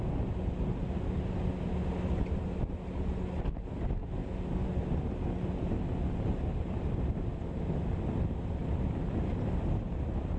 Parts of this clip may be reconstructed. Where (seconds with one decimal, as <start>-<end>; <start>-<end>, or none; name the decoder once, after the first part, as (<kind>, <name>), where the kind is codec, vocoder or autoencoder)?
none